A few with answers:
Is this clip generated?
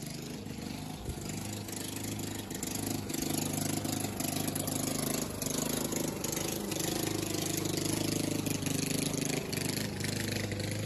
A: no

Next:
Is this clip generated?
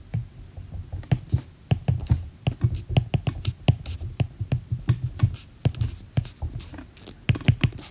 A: no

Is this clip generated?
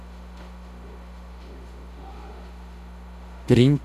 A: yes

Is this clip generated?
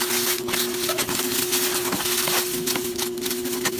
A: no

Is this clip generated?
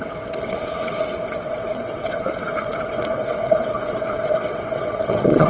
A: yes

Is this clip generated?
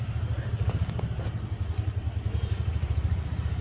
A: no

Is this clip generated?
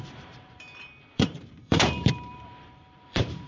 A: yes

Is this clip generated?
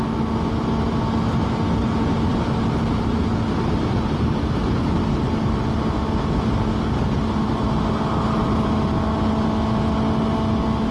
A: no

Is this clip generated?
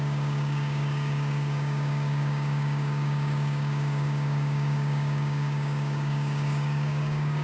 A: yes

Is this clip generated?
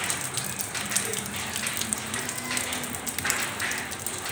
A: no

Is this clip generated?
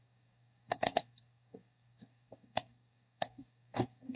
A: yes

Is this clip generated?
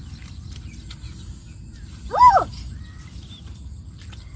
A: no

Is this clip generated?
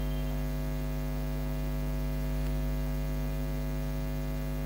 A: no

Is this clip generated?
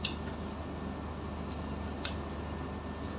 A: no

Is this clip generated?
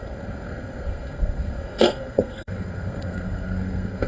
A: yes